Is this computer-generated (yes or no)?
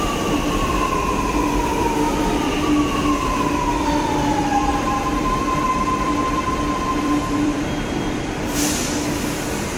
yes